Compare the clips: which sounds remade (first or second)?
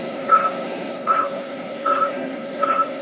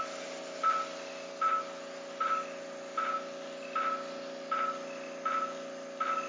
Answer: first